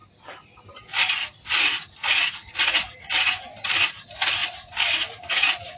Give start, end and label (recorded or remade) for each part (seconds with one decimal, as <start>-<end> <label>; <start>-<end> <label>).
0.0-5.8 recorded